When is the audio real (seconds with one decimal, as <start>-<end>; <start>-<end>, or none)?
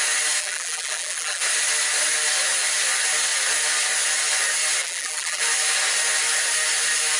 0.0-0.4; 1.4-4.8; 5.4-7.2